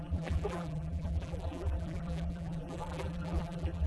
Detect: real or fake fake